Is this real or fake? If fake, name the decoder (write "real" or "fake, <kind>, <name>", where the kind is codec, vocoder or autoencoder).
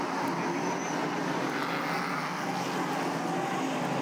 real